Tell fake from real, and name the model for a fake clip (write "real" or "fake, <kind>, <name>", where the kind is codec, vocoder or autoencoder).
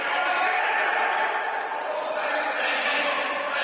fake, vocoder, BigVGAN v2